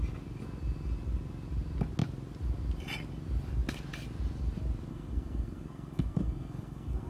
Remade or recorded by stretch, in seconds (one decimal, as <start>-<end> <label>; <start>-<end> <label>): 0.0-4.9 recorded; 4.9-7.1 remade